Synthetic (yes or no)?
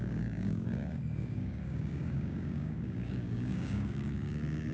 yes